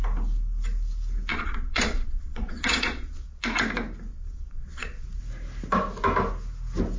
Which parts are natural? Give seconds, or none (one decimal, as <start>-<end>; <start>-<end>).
0.0-1.3; 3.4-4.1; 5.2-7.0